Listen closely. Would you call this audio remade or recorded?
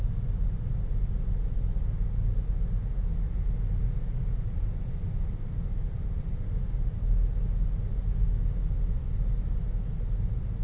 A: recorded